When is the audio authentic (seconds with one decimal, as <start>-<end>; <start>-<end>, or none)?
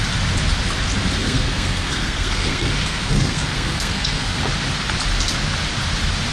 0.0-1.2; 4.4-6.3